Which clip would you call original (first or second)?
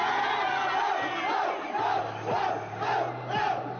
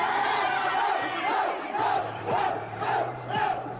first